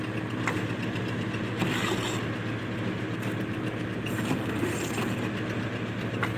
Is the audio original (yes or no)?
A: yes